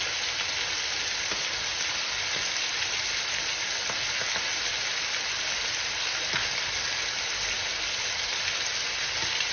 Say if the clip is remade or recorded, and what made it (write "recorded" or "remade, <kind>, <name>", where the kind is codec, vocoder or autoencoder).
recorded